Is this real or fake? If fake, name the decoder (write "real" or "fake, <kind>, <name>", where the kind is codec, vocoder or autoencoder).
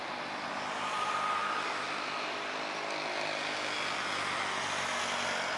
real